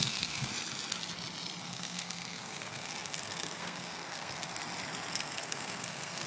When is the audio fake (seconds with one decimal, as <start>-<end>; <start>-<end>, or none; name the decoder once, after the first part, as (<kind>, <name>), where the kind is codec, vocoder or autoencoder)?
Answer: 0.0-0.5 (codec, SNAC); 1.6-4.5; 5.1-6.3